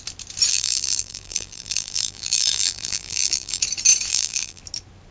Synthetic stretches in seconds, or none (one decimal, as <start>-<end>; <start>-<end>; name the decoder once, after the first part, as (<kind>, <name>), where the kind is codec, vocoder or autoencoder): 0.5-3.6 (vocoder, BigVGAN v2); 4.1-4.6